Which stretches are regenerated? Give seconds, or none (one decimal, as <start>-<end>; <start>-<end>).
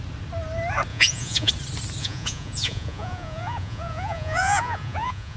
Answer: 0.9-1.5; 2.0-5.4